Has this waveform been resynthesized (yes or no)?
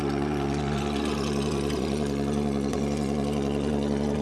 yes